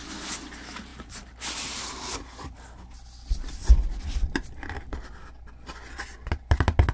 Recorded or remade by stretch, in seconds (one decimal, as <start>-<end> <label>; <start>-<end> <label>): 0.0-0.9 recorded; 0.9-1.9 remade; 1.9-6.9 recorded